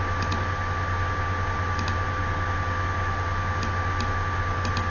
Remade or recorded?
recorded